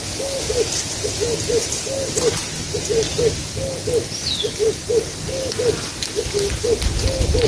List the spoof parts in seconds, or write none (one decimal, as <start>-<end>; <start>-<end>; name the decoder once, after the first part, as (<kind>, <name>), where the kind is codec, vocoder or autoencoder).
none